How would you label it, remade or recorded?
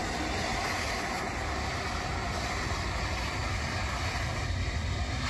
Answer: recorded